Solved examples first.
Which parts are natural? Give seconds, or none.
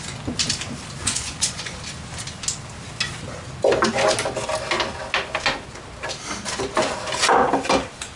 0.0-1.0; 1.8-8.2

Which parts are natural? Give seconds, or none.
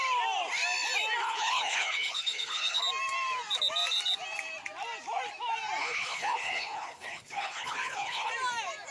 0.0-1.2; 2.8-5.8; 8.3-8.9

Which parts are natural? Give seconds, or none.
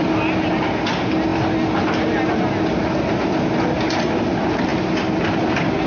0.0-5.9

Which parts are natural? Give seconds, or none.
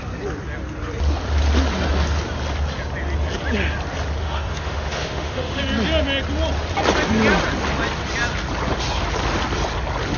0.0-4.2; 5.6-10.2